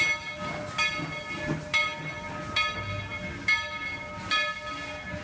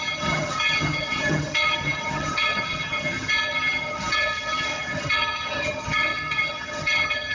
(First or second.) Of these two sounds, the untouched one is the first